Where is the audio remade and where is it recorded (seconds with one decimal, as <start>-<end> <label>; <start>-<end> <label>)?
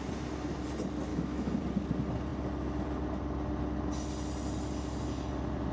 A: 0.0-1.1 recorded; 1.1-1.6 remade; 1.6-5.7 recorded